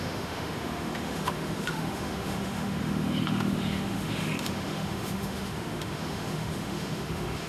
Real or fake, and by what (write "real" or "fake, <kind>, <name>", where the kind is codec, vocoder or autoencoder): fake, autoencoder, DAC-VAE